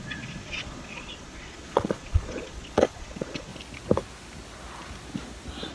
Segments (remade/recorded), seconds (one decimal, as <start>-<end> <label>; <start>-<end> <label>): 0.0-3.5 remade; 3.5-5.7 recorded